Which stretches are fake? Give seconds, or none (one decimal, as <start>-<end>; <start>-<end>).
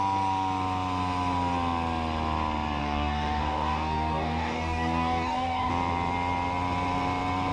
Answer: 2.8-5.7